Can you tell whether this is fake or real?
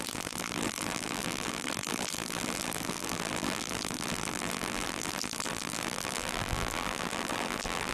fake